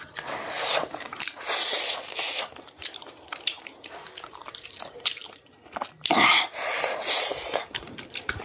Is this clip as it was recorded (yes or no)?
no